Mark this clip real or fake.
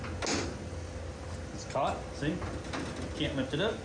real